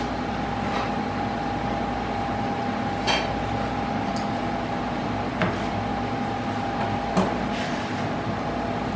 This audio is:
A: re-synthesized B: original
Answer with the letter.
B